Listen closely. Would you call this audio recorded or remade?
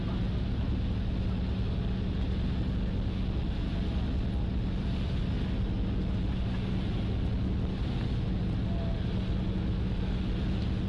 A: recorded